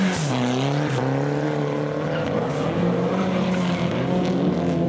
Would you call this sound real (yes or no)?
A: yes